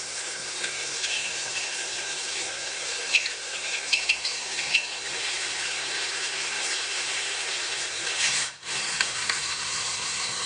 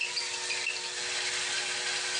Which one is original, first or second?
second